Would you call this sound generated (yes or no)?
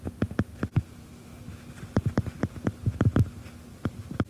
no